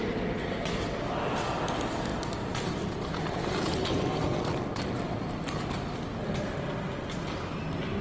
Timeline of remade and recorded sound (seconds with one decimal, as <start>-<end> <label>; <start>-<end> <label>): 0.0-8.0 recorded